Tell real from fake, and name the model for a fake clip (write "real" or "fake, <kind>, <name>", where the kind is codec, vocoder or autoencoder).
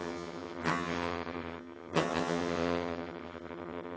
fake, vocoder, HiFi-GAN